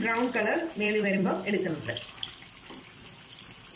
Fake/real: fake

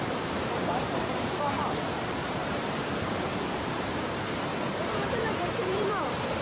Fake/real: fake